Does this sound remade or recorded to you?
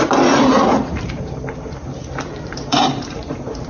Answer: remade